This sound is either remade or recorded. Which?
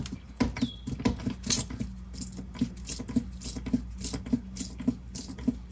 recorded